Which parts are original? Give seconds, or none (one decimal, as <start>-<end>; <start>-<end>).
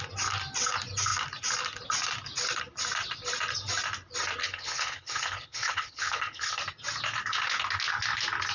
0.0-4.4; 6.6-8.5